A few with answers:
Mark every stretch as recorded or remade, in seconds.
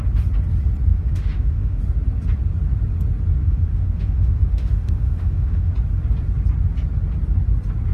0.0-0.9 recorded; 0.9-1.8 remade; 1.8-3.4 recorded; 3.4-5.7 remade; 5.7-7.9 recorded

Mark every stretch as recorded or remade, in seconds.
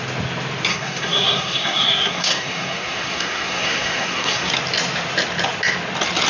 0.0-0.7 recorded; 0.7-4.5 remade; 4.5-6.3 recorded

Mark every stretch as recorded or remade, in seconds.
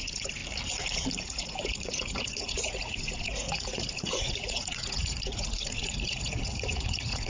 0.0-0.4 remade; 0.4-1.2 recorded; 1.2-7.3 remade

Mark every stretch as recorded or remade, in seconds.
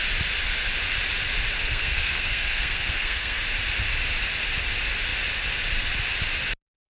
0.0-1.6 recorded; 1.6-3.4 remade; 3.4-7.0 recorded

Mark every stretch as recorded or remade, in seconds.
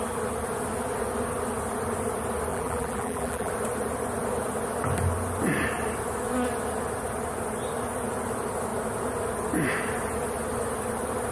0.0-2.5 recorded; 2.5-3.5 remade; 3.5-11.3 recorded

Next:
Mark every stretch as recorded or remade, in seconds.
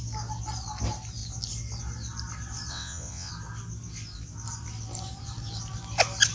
0.0-2.7 recorded; 2.7-3.3 remade; 3.3-6.3 recorded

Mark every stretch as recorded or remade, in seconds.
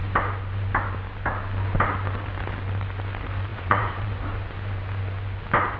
0.0-3.5 recorded; 3.5-4.2 remade; 4.2-5.8 recorded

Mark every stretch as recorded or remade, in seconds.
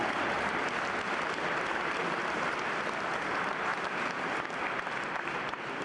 0.0-3.7 remade; 3.7-4.3 recorded; 4.3-5.8 remade